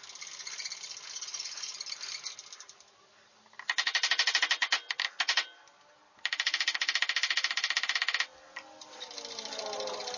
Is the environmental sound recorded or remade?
recorded